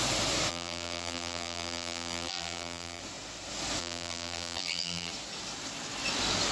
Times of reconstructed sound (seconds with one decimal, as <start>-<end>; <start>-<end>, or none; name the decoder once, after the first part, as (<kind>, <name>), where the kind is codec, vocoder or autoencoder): 0.5-3.0 (vocoder, BigVGAN v2); 3.8-5.1